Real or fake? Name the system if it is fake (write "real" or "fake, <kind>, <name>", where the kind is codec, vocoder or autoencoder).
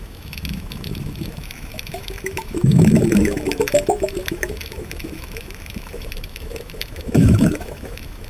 fake, autoencoder, DAC-VAE